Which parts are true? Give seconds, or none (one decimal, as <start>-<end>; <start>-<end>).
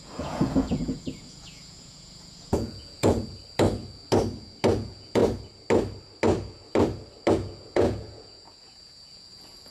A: 3.3-4.7; 5.2-7.3